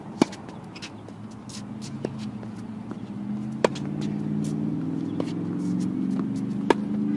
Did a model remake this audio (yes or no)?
no